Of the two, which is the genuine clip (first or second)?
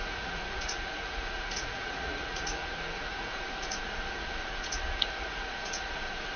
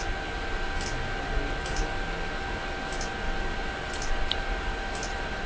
second